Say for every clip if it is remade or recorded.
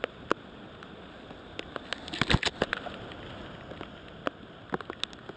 recorded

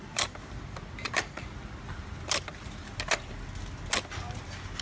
recorded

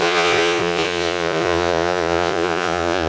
remade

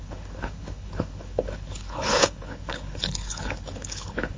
remade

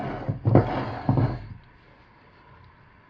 recorded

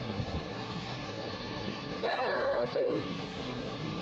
remade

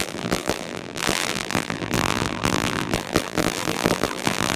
remade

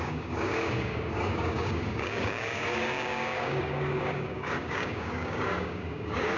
remade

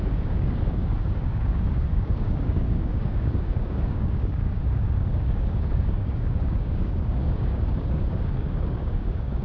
remade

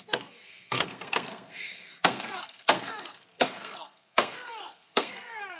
remade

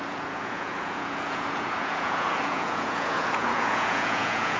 remade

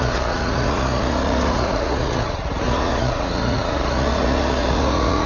remade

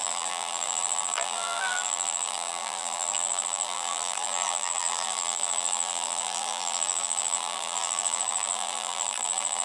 remade